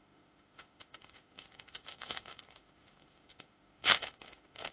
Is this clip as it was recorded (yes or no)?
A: no